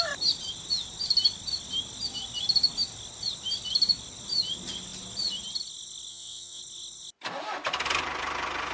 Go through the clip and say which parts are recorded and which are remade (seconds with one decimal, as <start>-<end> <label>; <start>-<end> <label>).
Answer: 0.0-6.1 recorded; 6.1-6.6 remade; 6.6-8.7 recorded